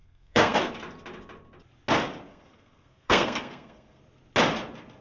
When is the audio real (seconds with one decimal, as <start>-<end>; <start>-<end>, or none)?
0.7-2.3; 4.0-5.0